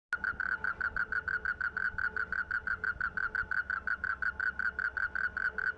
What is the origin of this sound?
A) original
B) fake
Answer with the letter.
A